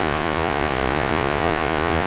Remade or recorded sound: remade